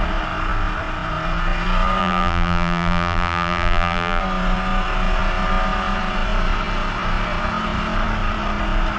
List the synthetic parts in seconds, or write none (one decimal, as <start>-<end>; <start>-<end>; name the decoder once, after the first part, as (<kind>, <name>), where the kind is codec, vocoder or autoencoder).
2.0-4.2 (vocoder, BigVGAN v2)